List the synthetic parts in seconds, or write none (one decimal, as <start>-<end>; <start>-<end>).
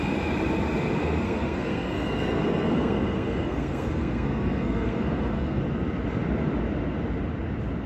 1.0-5.6